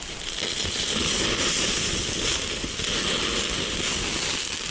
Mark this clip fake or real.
real